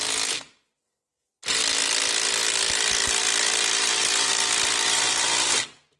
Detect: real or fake real